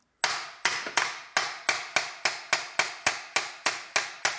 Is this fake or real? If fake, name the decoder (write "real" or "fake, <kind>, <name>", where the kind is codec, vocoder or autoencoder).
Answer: real